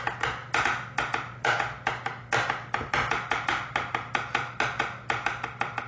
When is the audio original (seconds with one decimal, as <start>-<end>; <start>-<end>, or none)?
0.0-5.9